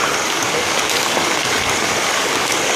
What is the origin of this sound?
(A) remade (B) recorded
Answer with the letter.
A